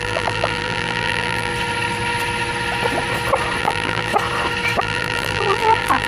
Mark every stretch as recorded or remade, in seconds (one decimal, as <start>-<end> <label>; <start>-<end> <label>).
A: 0.0-1.5 remade; 1.5-3.6 recorded; 3.6-4.1 remade; 4.1-4.8 recorded; 4.8-6.1 remade